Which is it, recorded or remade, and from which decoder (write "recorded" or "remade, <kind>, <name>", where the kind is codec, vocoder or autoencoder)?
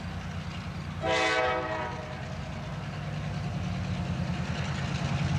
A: recorded